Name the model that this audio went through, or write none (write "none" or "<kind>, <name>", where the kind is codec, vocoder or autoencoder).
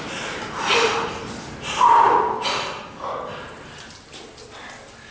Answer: none